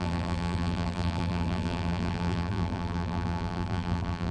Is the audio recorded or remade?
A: remade